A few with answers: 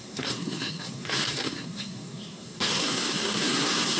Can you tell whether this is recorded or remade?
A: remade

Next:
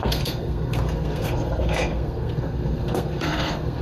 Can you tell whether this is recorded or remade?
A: remade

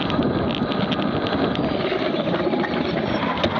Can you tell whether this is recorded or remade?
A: recorded